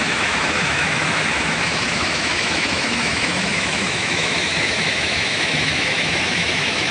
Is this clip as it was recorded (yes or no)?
no